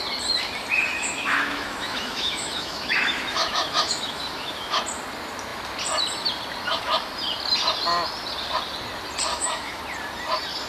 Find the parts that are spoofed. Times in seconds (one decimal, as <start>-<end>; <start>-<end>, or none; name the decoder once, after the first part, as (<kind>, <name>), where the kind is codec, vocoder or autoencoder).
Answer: 0.9-4.8 (autoencoder, DAC-VAE); 9.3-9.8